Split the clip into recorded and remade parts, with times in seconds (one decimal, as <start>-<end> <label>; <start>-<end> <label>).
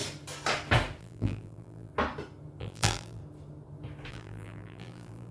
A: 0.0-1.0 recorded; 1.0-1.9 remade; 1.9-2.6 recorded; 2.6-3.2 remade; 3.2-4.1 recorded; 4.1-5.3 remade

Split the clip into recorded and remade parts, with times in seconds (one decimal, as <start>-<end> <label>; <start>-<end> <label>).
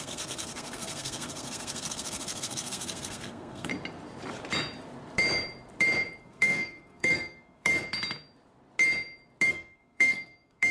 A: 0.0-3.7 remade; 3.7-6.2 recorded; 6.2-7.7 remade; 7.7-9.5 recorded; 9.5-10.7 remade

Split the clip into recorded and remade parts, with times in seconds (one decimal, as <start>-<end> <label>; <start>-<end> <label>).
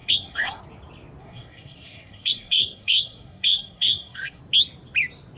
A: 0.0-0.6 remade; 0.6-1.2 recorded; 1.2-4.4 remade; 4.4-5.4 recorded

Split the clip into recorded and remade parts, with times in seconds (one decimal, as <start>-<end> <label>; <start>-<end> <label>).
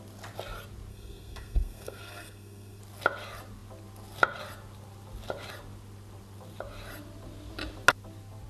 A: 0.0-0.9 recorded; 0.9-2.8 remade; 2.8-8.5 recorded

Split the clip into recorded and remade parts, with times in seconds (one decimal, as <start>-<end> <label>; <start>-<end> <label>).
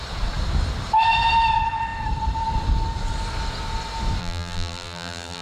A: 0.0-4.2 recorded; 4.2-5.4 remade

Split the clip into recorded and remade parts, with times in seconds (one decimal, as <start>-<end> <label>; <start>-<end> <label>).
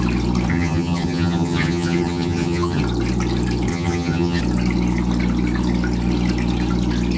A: 0.0-0.5 recorded; 0.5-2.8 remade; 2.8-3.7 recorded; 3.7-4.4 remade; 4.4-7.2 recorded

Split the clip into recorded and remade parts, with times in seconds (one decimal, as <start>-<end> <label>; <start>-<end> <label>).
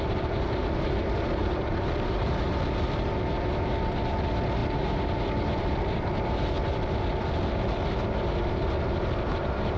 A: 0.0-1.4 recorded; 1.4-2.5 remade; 2.5-9.8 recorded